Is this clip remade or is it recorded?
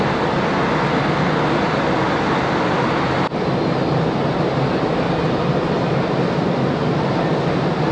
recorded